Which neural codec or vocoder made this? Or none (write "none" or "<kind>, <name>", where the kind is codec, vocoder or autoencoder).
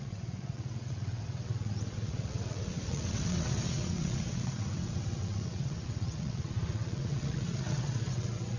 vocoder, WaveNeXt